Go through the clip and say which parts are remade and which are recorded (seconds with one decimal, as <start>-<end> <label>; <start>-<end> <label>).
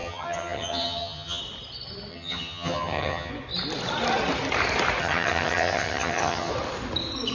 0.0-1.4 remade; 1.4-2.1 recorded; 2.1-3.3 remade; 3.3-5.0 recorded; 5.0-6.5 remade; 6.5-7.3 recorded